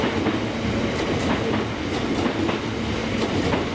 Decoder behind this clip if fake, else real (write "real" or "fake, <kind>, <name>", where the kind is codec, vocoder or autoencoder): real